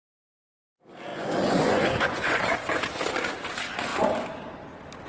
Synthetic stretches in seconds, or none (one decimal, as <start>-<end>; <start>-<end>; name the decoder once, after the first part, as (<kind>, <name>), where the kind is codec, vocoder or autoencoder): 1.1-2.4 (vocoder, Vocos)